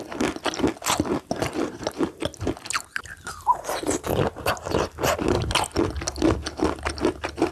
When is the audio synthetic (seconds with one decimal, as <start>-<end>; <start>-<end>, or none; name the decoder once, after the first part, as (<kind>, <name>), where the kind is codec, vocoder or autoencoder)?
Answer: none